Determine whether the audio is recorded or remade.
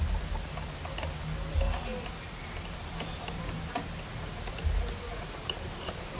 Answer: recorded